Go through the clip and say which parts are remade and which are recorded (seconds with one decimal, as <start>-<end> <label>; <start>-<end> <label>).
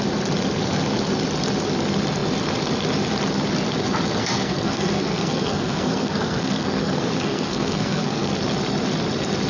0.0-4.2 recorded; 4.2-8.3 remade; 8.3-9.5 recorded